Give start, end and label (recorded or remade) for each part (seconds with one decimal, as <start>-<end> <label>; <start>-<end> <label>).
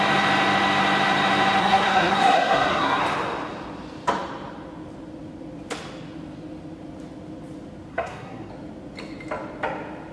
0.0-1.6 recorded; 1.6-3.0 remade; 3.0-7.9 recorded; 7.9-8.5 remade; 8.5-10.1 recorded